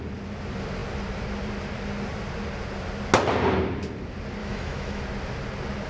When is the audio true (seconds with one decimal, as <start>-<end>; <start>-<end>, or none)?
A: 0.0-4.4; 5.0-5.9